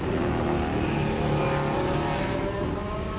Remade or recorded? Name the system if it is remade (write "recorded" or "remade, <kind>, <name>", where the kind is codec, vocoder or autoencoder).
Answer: recorded